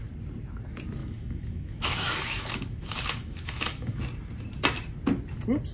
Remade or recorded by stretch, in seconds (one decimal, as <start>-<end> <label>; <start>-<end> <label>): 0.0-1.0 recorded; 1.0-4.0 remade; 4.0-5.7 recorded